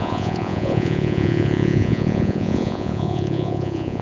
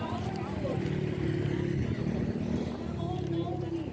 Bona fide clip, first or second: second